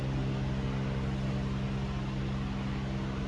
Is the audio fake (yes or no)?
no